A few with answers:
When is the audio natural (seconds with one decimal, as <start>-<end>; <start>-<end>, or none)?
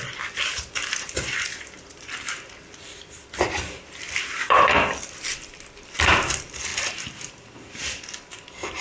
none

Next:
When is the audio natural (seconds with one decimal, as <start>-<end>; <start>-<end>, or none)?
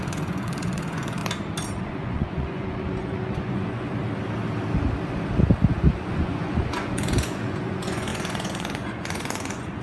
1.2-1.8; 4.0-6.0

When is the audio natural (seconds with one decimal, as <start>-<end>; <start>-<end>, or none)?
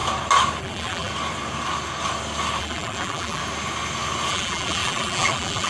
0.0-0.6; 1.1-2.6; 3.4-4.3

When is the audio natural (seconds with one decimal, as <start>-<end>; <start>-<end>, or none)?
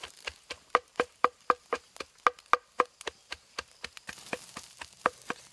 0.0-5.5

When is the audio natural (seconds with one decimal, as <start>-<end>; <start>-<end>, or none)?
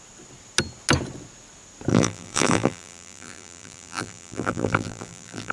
0.0-1.9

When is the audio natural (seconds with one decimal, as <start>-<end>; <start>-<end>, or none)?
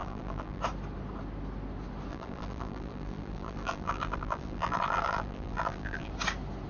0.6-2.1; 6.1-6.7